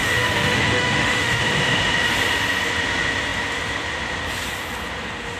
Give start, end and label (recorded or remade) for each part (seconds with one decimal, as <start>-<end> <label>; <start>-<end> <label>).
0.0-1.4 remade; 1.4-5.4 recorded